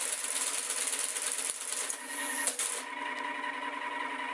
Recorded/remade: recorded